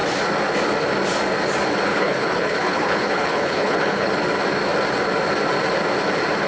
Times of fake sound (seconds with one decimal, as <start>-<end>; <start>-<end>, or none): 1.9-4.1